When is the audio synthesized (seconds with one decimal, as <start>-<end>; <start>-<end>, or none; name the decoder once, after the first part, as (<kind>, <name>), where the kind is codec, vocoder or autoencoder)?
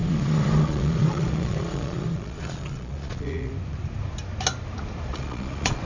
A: 0.0-3.5 (vocoder, Vocos); 5.1-5.8